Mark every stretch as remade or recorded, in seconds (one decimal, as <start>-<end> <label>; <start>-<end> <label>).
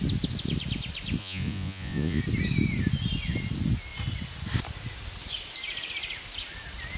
0.0-1.2 recorded; 1.2-2.2 remade; 2.2-7.0 recorded